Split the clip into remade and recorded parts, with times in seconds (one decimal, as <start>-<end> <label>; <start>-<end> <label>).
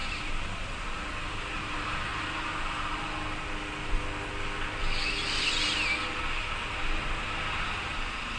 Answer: 0.0-1.3 recorded; 1.3-2.1 remade; 2.1-6.6 recorded; 6.6-8.4 remade